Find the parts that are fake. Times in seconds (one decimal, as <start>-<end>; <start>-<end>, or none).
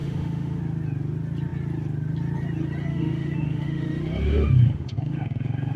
0.0-0.6; 2.9-5.8